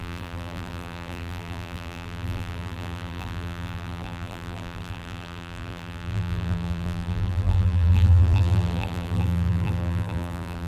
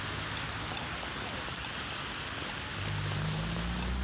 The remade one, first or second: first